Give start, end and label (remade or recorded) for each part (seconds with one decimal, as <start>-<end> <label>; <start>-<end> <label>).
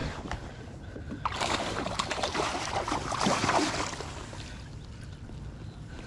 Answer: 0.0-3.7 remade; 3.7-6.1 recorded